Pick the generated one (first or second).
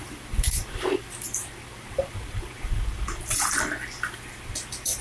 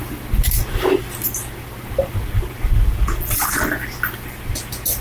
first